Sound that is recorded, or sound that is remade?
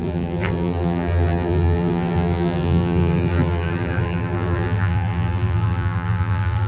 remade